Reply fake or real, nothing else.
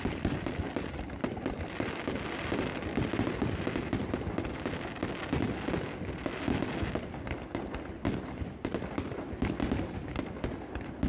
real